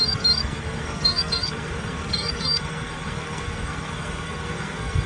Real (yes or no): no